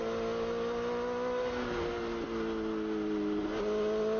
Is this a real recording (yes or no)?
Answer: yes